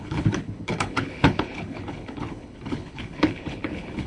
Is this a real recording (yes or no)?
no